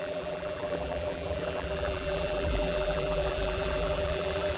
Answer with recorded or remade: remade